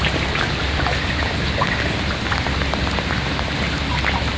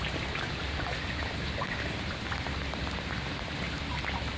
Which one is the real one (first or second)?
first